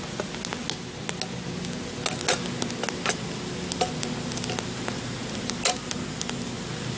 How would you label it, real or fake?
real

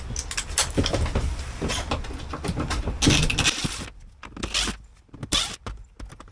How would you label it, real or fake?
real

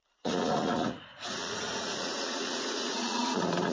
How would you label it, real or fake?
fake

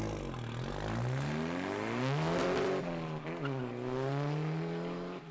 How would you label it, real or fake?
real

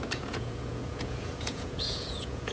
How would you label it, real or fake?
fake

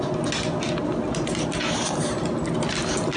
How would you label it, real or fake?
real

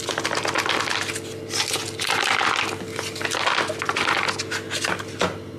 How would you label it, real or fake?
real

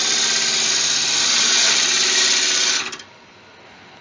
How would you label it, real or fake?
real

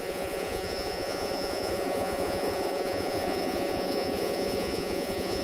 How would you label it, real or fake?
fake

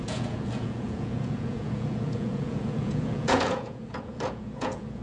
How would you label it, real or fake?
fake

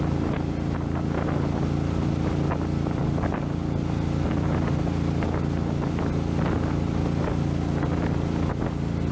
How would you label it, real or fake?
real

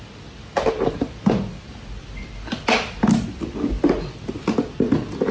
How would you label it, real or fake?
real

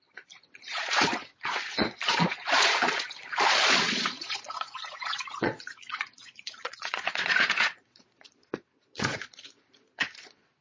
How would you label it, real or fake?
fake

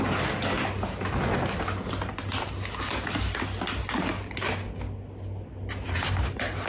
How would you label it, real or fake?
real